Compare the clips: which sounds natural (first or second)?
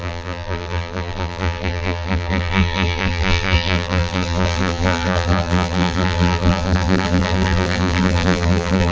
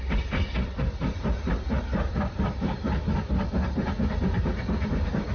second